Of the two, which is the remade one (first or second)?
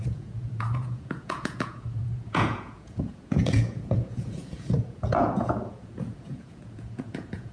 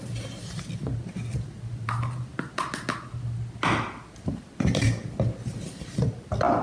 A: first